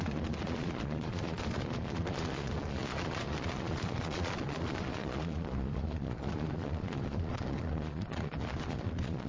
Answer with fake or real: fake